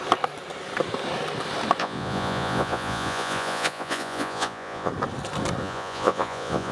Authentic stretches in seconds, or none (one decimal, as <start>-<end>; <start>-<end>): 0.0-1.8; 4.9-5.6